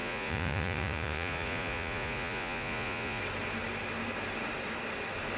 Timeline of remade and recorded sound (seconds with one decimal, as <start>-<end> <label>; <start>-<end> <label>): 0.0-3.2 remade; 3.2-5.4 recorded